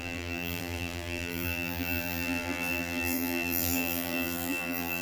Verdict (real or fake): fake